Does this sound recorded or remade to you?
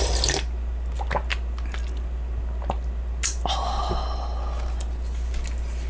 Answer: recorded